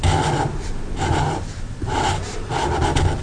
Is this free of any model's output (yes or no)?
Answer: yes